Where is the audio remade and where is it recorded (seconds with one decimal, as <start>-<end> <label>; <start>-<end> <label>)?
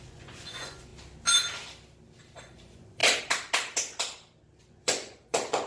0.0-0.9 remade; 0.9-2.4 recorded; 2.4-3.0 remade; 3.0-4.6 recorded; 4.6-5.7 remade